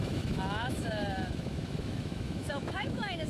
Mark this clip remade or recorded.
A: remade